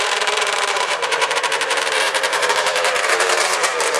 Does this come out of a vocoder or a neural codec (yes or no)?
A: yes